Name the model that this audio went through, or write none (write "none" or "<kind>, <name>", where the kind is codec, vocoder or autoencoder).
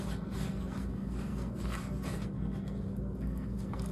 codec, SNAC